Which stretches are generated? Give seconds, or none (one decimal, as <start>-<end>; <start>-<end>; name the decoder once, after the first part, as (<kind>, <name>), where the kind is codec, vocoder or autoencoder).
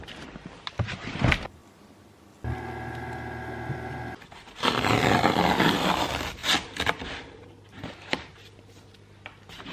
0.0-1.6 (vocoder, BigVGAN v2); 4.2-6.4; 7.1-9.7